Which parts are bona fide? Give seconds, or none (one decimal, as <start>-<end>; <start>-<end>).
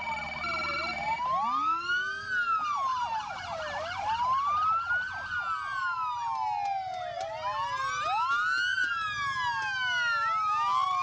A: 0.0-11.0